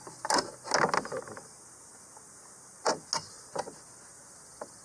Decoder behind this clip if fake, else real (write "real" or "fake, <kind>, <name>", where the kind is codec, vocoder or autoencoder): real